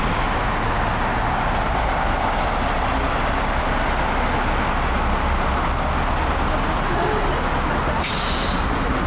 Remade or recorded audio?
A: recorded